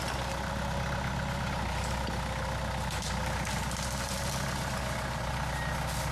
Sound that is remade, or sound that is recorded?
recorded